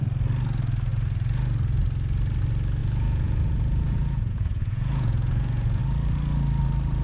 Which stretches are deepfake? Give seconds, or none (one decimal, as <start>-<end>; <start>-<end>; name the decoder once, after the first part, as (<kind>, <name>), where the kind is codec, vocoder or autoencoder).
2.8-5.8 (vocoder, Vocos)